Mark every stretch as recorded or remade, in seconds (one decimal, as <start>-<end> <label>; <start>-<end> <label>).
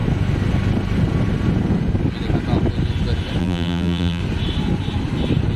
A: 0.0-3.4 recorded; 3.4-4.2 remade; 4.2-5.6 recorded